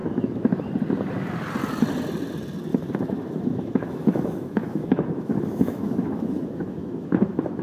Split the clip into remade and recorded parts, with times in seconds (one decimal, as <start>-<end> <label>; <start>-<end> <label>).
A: 0.0-0.6 remade; 0.6-2.7 recorded; 2.7-7.6 remade